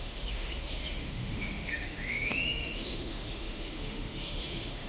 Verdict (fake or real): fake